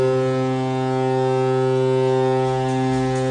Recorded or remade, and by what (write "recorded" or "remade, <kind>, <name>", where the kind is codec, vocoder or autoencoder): recorded